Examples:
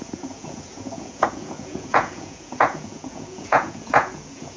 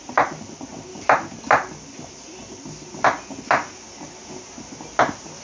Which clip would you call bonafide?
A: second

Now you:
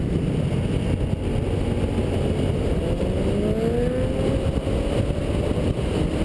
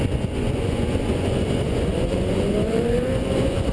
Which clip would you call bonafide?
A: first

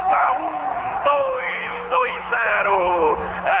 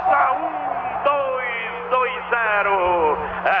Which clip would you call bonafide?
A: second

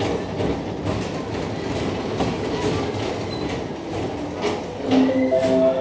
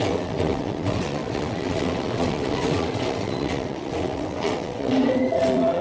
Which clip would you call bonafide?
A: first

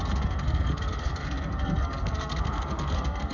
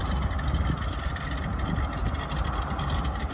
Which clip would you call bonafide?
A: second